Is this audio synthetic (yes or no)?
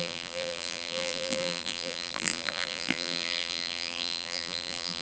yes